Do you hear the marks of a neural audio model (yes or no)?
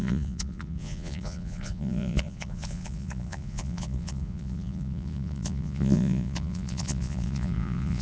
yes